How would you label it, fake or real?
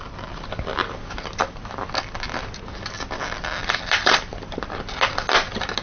real